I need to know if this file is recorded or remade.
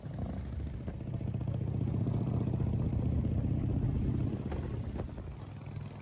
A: recorded